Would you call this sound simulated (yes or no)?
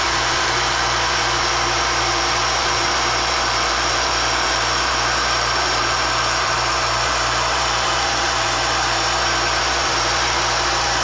yes